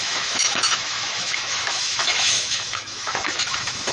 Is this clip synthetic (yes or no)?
yes